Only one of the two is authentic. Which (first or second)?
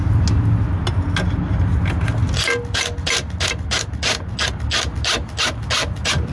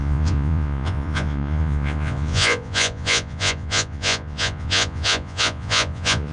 first